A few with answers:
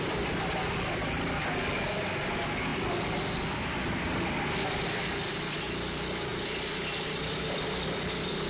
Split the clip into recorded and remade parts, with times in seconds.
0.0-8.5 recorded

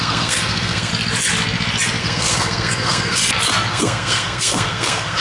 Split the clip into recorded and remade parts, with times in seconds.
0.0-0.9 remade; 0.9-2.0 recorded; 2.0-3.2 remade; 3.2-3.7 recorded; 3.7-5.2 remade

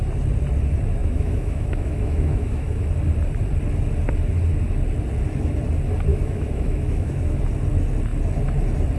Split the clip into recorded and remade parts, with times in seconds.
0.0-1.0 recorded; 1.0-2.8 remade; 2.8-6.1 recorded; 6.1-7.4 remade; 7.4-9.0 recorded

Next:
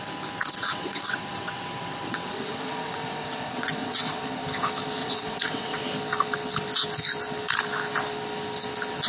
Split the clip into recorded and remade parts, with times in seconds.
0.0-0.6 recorded; 0.6-4.2 remade; 4.2-5.0 recorded; 5.0-5.8 remade; 5.8-9.1 recorded